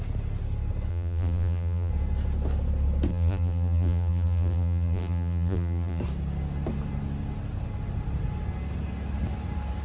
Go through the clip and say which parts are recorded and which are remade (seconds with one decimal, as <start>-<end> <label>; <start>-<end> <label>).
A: 0.0-0.9 recorded; 0.9-1.9 remade; 1.9-3.1 recorded; 3.1-6.0 remade; 6.0-9.8 recorded